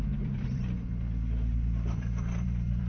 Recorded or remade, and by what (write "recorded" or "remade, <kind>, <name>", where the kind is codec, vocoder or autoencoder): remade, vocoder, BigVGAN v2